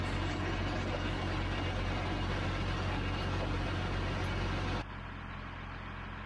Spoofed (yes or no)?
no